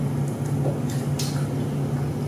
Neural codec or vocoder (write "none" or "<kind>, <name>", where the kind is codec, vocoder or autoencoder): none